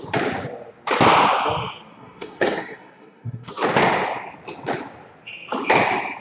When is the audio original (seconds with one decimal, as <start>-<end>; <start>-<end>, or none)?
0.0-1.9; 3.5-6.2